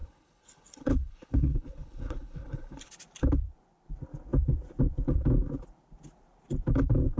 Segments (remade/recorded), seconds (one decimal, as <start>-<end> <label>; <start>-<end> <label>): 0.0-2.9 remade; 2.9-7.2 recorded